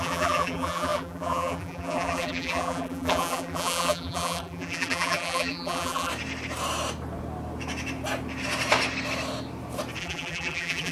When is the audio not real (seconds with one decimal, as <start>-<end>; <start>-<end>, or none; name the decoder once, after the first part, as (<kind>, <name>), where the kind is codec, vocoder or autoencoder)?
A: 0.0-6.1 (vocoder, BigVGAN v2); 10.0-10.9